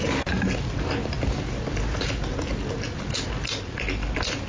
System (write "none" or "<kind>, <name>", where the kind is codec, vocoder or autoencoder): none